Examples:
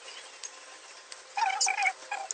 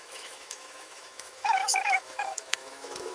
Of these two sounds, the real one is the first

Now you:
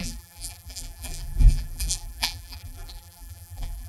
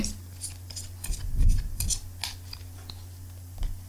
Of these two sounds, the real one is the second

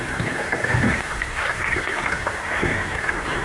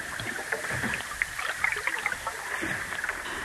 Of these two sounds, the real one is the second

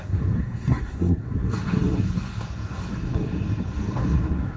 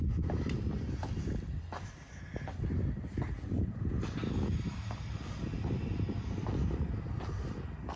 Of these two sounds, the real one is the second